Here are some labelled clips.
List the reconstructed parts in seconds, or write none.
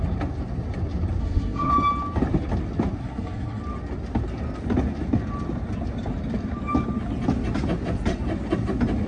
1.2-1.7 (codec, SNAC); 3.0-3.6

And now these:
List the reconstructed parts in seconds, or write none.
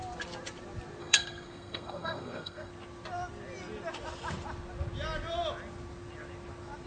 1.0-2.7 (codec, SNAC)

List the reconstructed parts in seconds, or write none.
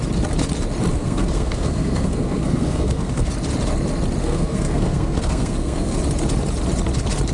0.9-3.3 (codec, SNAC); 4.2-6.0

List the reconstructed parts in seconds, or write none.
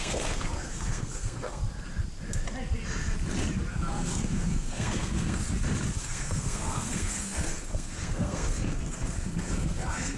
0.0-1.6 (codec, SNAC); 3.7-5.4; 6.0-10.2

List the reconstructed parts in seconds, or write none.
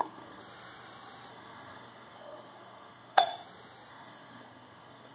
0.0-0.4 (codec, SNAC); 1.3-3.3; 3.9-5.1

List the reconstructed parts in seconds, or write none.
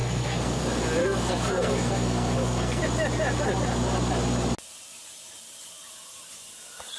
0.0-0.6 (codec, SNAC); 1.0-2.8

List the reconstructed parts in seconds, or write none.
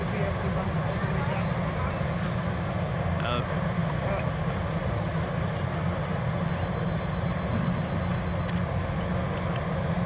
none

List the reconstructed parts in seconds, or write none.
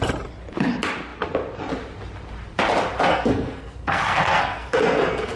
3.1-5.4 (codec, SNAC)